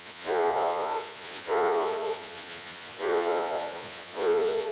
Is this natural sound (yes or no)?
no